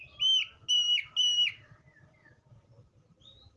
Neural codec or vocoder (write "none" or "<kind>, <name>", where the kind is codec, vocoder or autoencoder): none